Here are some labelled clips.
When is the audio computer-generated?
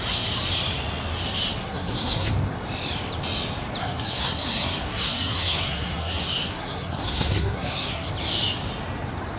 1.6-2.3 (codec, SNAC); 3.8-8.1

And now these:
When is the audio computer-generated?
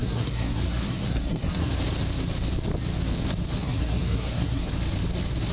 0.0-1.7 (codec, SNAC); 3.6-4.7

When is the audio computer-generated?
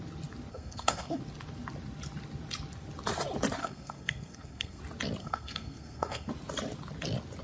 0.5-1.2 (codec, SNAC); 3.6-4.8; 5.2-6.3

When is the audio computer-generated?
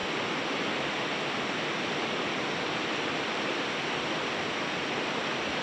none